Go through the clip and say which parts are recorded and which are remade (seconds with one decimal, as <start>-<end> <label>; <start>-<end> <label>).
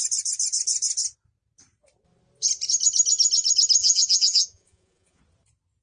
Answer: 0.0-3.8 recorded; 3.8-5.2 remade; 5.2-5.8 recorded